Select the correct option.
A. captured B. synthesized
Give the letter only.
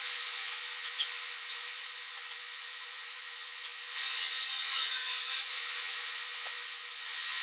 B